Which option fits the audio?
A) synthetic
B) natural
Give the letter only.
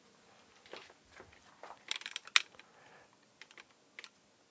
B